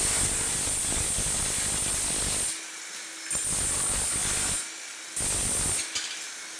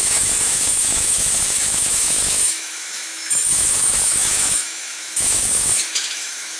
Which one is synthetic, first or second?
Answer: second